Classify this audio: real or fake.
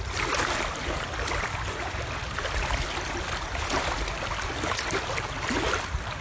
real